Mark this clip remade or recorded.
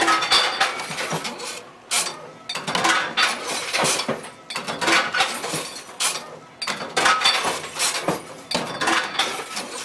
recorded